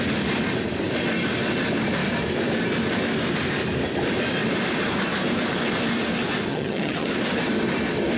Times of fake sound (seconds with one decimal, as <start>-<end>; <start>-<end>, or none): 6.5-7.1